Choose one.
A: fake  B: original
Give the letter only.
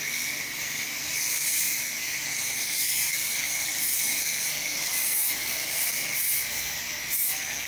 A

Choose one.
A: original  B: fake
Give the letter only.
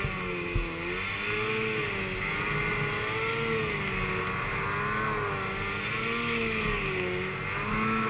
A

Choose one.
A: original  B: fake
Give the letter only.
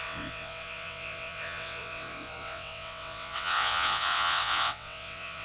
B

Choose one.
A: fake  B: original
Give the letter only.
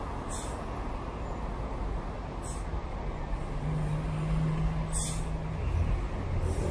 B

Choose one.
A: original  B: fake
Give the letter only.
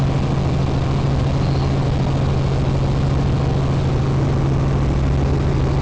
A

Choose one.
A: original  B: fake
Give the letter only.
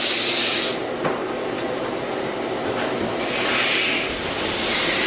A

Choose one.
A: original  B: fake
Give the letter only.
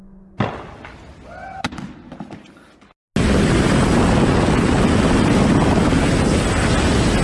A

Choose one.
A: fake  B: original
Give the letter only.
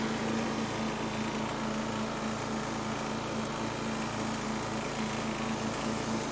B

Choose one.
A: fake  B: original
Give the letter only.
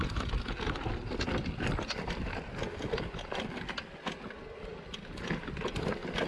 B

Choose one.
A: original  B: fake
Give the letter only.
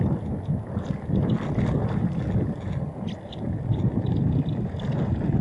A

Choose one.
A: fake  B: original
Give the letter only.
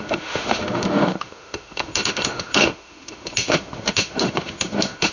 A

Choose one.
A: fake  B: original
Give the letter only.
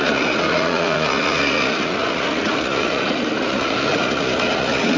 A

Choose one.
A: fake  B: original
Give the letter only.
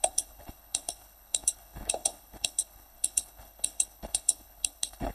A